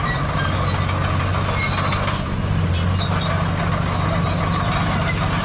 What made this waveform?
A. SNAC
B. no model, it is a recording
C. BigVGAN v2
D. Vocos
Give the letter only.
B